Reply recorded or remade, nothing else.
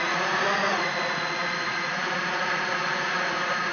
remade